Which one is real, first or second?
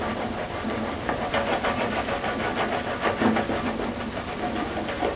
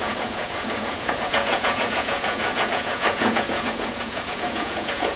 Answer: first